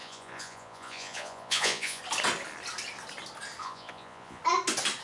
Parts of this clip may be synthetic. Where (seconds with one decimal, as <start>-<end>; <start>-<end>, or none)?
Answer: 0.0-2.0; 3.6-4.4